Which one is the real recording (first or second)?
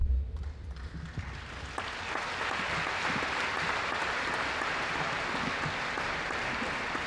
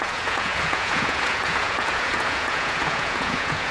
first